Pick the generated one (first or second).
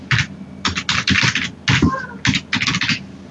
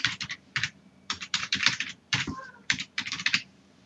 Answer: second